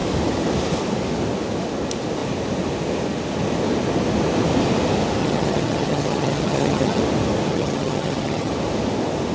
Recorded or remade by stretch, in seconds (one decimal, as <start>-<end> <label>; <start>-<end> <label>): 0.0-5.2 recorded; 5.2-7.0 remade; 7.0-7.5 recorded; 7.5-8.5 remade; 8.5-9.3 recorded